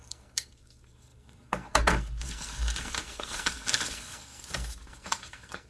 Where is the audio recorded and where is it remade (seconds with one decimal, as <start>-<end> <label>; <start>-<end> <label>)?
0.0-5.7 remade